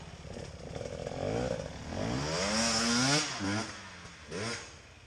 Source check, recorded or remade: recorded